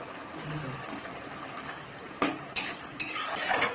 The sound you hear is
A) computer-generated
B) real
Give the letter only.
B